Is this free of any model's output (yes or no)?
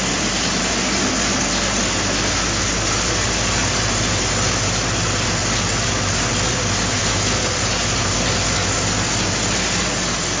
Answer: yes